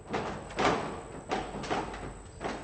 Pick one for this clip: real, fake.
real